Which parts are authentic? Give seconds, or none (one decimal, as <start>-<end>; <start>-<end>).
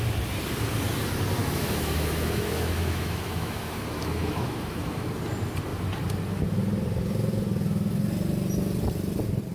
0.0-1.4; 5.1-9.5